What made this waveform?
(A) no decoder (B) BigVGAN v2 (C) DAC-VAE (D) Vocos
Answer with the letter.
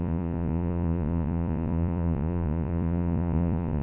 D